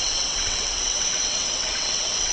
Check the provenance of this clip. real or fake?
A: fake